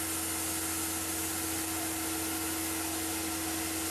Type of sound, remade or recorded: recorded